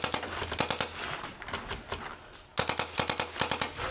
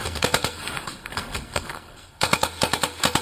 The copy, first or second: second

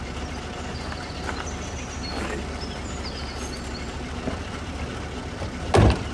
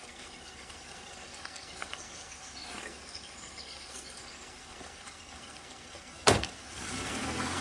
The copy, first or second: second